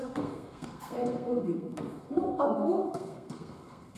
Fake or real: fake